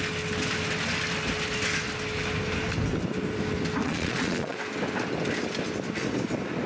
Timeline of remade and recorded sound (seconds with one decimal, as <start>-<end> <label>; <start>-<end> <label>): 0.0-3.8 recorded; 3.8-4.6 remade; 4.6-6.7 recorded